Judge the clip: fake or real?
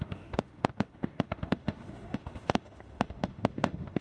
fake